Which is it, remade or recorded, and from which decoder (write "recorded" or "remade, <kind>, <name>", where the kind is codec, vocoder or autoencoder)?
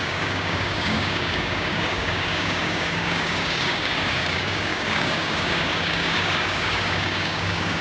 remade, codec, DAC